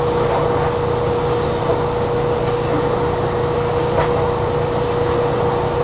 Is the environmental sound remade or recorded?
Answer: recorded